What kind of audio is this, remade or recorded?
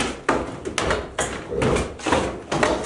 recorded